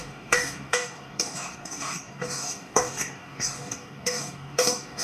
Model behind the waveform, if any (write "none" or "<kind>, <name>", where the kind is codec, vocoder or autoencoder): codec, DAC